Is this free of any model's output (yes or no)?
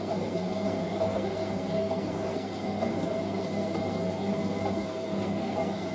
no